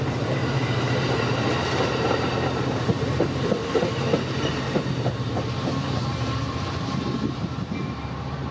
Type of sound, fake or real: fake